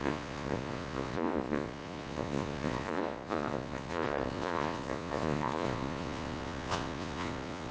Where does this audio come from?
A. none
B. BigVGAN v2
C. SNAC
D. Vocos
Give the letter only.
D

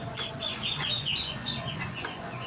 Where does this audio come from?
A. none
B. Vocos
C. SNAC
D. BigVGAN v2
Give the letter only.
B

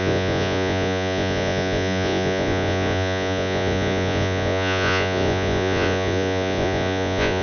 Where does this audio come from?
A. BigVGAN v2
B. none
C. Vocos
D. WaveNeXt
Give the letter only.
C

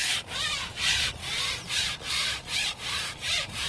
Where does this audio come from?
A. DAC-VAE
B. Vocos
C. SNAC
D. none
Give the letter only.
B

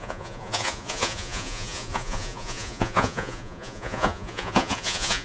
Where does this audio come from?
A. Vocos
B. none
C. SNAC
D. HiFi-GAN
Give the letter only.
A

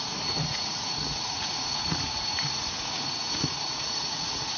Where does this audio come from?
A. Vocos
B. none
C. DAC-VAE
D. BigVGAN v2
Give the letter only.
A